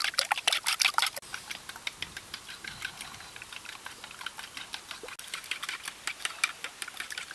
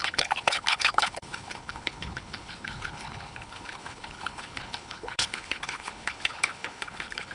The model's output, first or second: second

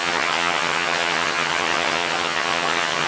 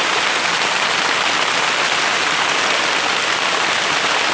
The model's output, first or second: first